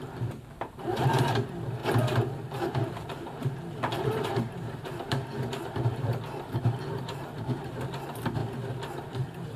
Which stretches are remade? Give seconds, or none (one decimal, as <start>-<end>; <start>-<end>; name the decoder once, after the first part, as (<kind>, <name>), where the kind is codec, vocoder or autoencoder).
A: 0.0-1.8 (vocoder, BigVGAN v2); 2.9-8.4